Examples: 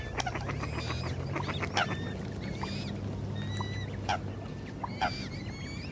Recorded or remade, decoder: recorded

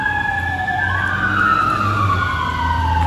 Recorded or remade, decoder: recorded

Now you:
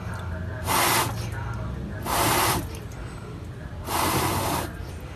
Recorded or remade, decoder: recorded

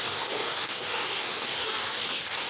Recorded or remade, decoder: remade, codec, DAC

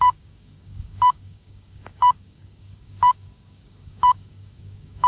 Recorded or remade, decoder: remade, codec, DAC